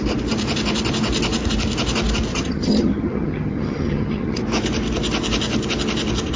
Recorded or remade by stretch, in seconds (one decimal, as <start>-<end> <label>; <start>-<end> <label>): 0.0-2.3 recorded; 2.3-4.4 remade; 4.4-6.4 recorded